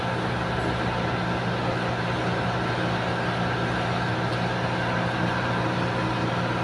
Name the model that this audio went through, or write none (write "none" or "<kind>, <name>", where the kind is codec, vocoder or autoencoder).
none